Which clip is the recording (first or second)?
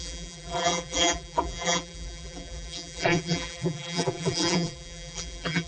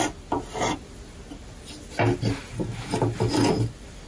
second